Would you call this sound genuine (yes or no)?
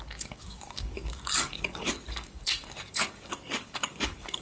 no